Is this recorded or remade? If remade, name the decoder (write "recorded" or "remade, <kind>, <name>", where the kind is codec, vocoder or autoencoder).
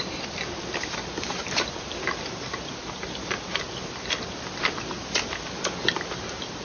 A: recorded